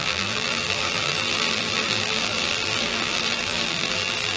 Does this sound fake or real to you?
fake